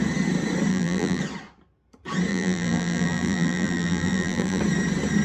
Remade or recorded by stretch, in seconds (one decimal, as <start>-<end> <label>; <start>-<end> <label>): 0.0-0.7 recorded; 0.7-1.2 remade; 1.2-2.3 recorded; 2.3-4.6 remade; 4.6-5.2 recorded